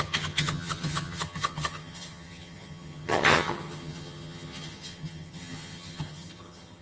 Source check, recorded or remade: remade